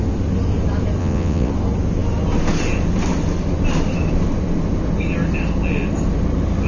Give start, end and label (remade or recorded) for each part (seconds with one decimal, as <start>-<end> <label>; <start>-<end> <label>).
0.0-1.0 recorded; 1.0-1.5 remade; 1.5-6.7 recorded